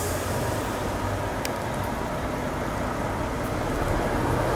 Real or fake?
real